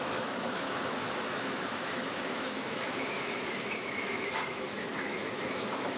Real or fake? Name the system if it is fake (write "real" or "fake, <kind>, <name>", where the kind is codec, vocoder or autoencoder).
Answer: fake, autoencoder, DAC-VAE